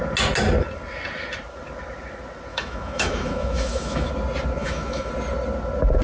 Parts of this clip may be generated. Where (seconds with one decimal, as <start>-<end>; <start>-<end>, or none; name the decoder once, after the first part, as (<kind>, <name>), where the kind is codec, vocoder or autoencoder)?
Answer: 2.5-4.1 (autoencoder, DAC-VAE); 4.6-5.1